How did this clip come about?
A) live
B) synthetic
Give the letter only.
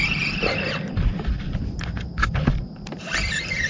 A